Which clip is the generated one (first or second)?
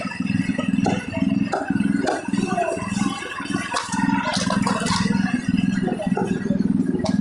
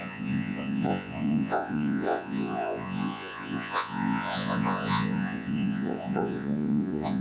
second